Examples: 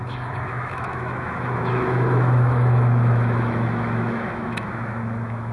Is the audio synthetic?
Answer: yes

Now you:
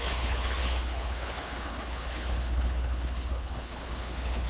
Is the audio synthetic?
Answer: yes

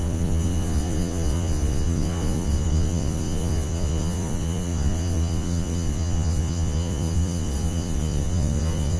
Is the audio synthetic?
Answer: yes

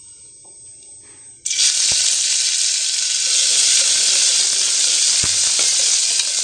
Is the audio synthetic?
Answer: no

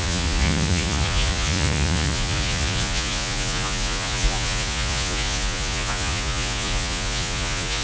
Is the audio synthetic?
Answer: yes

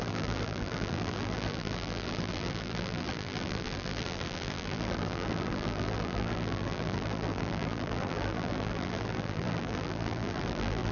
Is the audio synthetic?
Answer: yes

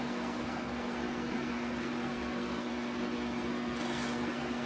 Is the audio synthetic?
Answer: yes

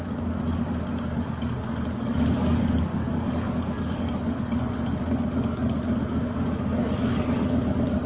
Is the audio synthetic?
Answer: yes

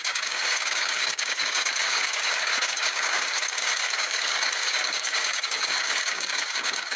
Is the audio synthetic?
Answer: yes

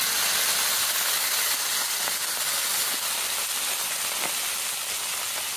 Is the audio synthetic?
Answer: no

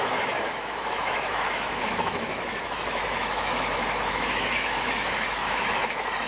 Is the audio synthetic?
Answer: yes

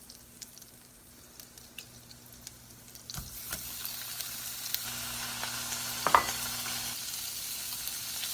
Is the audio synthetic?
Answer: no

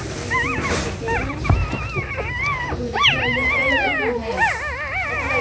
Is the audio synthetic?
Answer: no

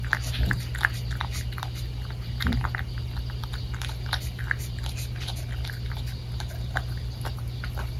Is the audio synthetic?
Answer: no